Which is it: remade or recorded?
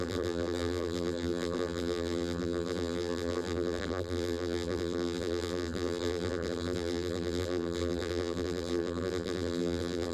remade